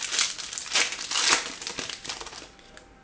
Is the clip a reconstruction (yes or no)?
no